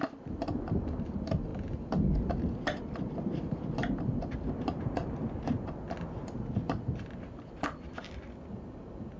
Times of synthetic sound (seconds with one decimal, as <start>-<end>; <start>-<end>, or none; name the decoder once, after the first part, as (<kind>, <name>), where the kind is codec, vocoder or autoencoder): none